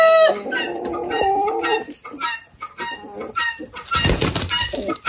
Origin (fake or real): real